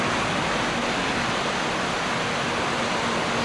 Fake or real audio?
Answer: real